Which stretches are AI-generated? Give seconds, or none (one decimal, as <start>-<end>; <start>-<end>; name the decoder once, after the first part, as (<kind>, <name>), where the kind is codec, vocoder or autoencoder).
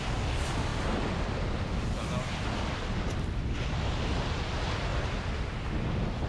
none